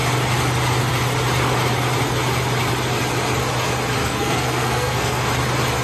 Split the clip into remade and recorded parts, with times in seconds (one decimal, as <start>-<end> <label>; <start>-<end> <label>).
0.0-4.0 recorded; 4.0-5.3 remade; 5.3-5.8 recorded